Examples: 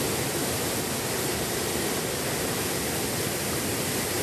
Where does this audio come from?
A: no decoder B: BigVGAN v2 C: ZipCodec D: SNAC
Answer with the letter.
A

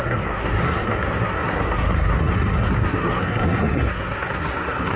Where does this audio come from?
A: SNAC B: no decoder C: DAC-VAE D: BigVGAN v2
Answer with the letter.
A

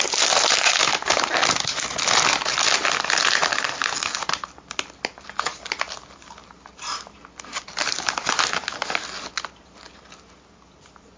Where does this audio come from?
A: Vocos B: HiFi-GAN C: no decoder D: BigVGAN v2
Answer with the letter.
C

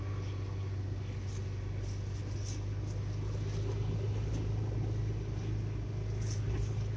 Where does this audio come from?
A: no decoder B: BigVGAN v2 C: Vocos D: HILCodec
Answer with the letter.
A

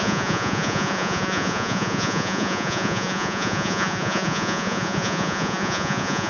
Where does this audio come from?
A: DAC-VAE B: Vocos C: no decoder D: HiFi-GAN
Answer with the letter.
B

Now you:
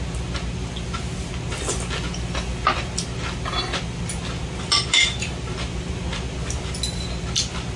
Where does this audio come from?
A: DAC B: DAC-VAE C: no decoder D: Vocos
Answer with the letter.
C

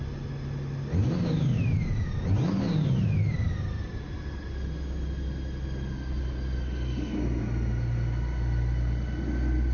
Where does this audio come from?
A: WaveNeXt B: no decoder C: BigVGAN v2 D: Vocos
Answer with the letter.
B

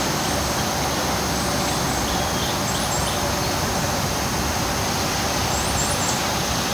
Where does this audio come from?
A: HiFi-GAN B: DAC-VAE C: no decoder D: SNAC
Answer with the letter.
C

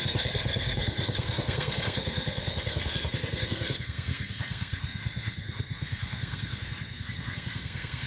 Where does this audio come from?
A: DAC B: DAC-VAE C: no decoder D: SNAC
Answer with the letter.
D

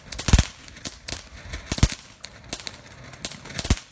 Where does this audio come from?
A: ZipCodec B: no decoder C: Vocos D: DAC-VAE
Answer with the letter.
B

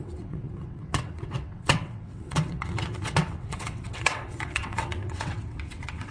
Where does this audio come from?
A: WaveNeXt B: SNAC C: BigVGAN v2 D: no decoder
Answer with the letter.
A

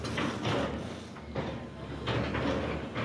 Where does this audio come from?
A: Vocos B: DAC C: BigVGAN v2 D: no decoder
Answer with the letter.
D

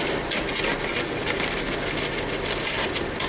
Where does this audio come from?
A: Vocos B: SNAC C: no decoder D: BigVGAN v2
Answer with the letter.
C